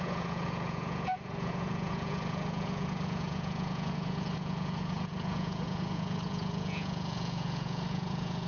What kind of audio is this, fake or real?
fake